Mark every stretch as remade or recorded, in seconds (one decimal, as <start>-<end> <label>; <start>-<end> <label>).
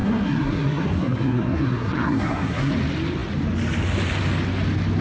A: 0.0-2.7 remade; 2.7-5.0 recorded